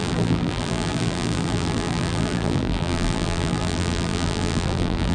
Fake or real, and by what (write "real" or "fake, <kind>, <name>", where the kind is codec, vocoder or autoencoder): fake, vocoder, BigVGAN v2